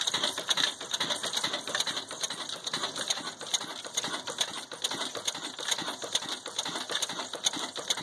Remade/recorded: recorded